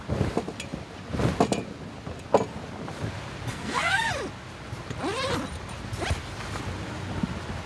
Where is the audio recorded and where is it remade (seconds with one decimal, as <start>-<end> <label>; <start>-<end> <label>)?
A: 0.0-3.5 recorded; 3.5-4.1 remade; 4.1-7.7 recorded